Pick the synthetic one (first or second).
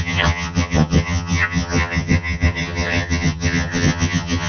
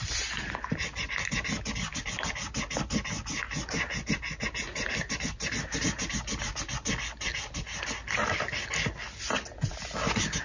first